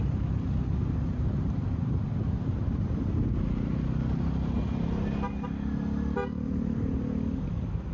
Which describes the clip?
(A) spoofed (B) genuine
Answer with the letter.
B